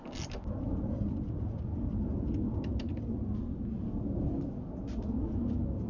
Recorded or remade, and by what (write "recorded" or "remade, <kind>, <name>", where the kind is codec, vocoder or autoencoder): recorded